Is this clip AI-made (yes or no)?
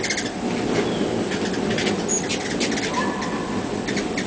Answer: no